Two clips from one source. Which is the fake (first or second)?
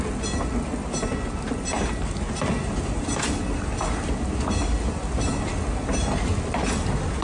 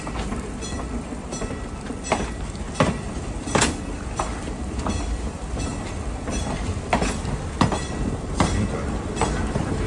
second